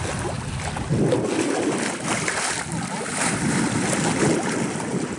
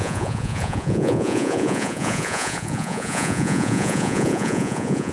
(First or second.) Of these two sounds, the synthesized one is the second